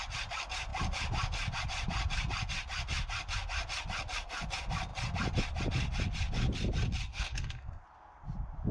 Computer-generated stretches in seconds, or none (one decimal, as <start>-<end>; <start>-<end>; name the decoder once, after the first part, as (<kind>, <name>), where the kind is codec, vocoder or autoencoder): 7.1-7.8 (codec, SNAC)